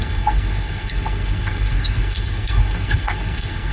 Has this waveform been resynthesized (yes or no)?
yes